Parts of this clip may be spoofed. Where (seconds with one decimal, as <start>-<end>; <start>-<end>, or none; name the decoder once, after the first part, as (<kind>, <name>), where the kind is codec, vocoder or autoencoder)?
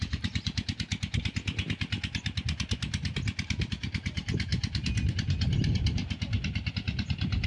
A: 0.0-0.9 (vocoder, BigVGAN v2); 3.7-4.5; 5.1-6.0; 6.7-7.5